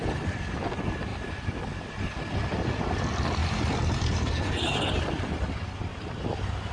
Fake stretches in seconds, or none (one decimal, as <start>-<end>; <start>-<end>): 3.4-4.3; 5.9-6.7